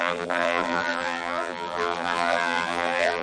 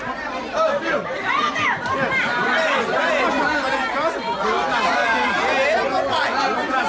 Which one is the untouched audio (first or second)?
second